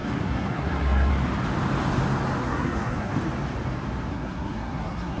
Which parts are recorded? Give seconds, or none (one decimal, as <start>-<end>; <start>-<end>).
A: 1.1-2.4; 3.1-4.1